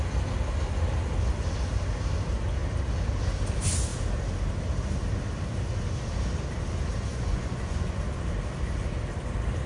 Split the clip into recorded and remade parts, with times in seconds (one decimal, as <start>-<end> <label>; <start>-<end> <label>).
0.0-7.1 recorded; 7.1-8.0 remade; 8.0-9.7 recorded